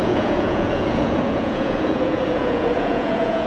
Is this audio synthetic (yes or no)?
yes